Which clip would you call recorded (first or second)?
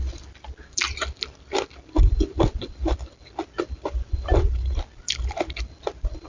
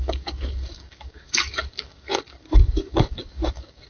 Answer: first